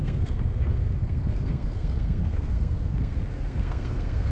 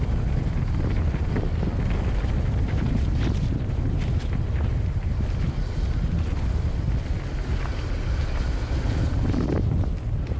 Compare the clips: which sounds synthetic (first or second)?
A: first